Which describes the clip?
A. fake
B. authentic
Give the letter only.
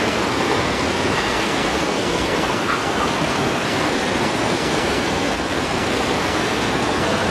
A